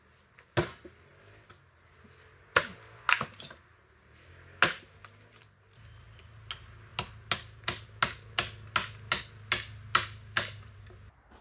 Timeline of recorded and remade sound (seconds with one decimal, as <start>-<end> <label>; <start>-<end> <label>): 0.0-11.4 recorded